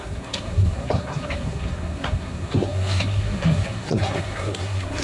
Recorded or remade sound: remade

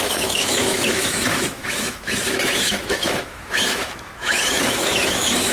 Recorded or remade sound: remade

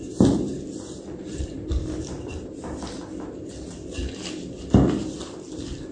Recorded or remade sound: remade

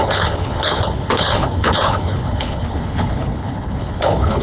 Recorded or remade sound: remade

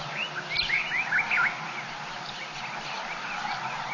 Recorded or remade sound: recorded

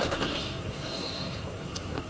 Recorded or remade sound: remade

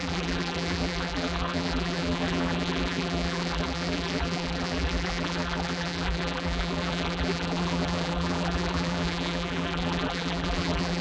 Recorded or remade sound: remade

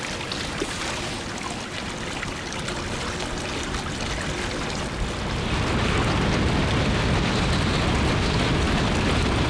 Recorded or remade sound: recorded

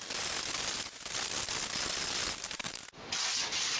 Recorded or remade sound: recorded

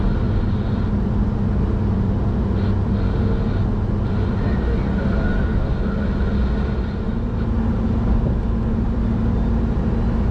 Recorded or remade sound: recorded